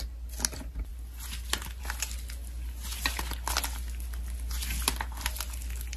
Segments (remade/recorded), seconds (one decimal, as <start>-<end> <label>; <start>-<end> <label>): 0.0-6.0 recorded